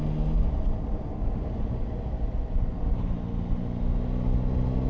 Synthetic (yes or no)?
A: no